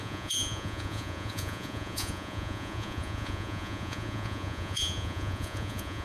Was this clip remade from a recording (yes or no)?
yes